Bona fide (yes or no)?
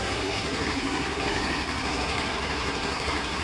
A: no